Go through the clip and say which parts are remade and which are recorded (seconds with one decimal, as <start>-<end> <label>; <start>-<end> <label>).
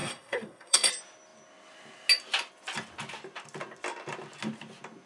0.0-0.9 remade; 0.9-5.1 recorded